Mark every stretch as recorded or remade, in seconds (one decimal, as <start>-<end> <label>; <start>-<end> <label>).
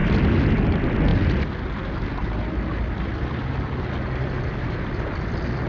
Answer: 0.0-5.7 recorded